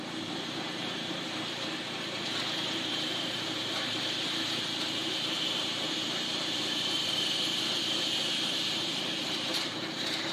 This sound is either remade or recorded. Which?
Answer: remade